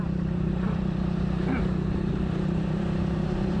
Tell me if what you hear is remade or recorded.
remade